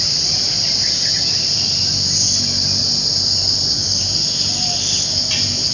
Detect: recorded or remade recorded